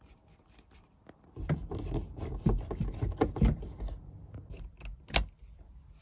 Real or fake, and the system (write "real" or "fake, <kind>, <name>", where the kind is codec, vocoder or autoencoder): real